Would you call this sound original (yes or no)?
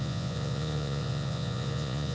no